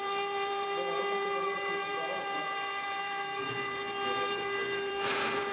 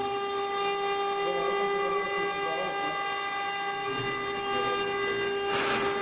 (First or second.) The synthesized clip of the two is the first